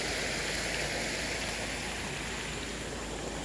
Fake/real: real